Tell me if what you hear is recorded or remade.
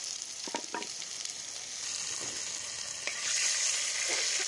recorded